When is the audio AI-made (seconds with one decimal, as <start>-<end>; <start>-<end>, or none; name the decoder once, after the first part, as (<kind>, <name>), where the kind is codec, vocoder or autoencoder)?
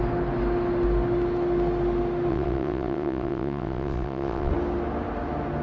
2.3-4.5 (vocoder, WaveNeXt)